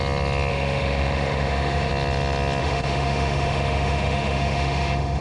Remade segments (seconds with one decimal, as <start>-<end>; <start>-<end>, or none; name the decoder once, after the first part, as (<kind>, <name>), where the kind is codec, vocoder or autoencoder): 0.5-1.9 (autoencoder, DAC-VAE); 2.6-5.2